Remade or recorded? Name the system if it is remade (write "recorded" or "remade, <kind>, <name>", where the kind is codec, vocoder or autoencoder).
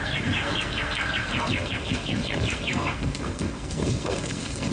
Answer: remade, codec, SNAC